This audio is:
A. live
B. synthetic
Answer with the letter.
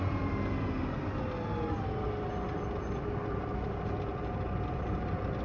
A